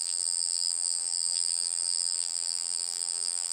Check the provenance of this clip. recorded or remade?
remade